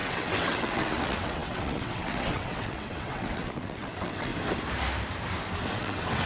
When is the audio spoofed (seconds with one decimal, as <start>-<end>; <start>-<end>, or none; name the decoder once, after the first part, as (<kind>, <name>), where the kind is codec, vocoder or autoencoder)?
0.0-4.3 (vocoder, WaveNeXt); 5.7-6.3